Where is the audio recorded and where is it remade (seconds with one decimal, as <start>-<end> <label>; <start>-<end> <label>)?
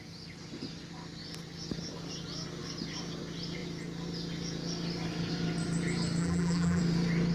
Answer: 0.0-6.2 recorded; 6.2-6.8 remade; 6.8-7.3 recorded